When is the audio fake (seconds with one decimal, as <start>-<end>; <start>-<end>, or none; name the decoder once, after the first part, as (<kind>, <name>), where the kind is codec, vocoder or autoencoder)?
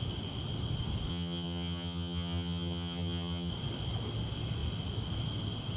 1.1-3.5 (vocoder, HiFi-GAN)